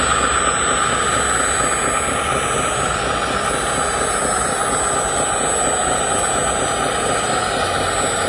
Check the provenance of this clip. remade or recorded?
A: recorded